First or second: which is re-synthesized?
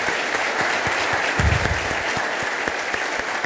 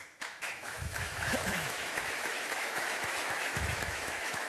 second